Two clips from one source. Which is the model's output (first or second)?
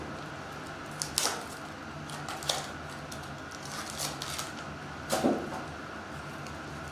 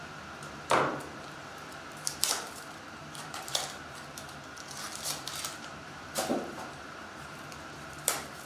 second